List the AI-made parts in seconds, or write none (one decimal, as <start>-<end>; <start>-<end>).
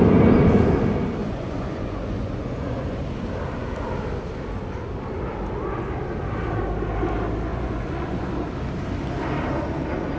1.2-3.0; 7.5-8.3